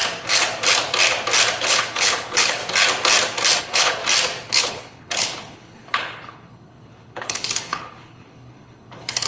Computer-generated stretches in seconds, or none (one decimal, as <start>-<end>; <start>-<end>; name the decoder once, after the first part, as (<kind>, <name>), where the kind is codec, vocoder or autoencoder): 1.6-2.6 (codec, HILCodec); 3.6-4.0; 4.5-9.3